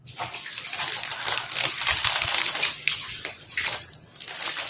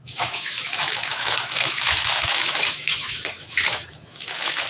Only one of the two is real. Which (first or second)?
first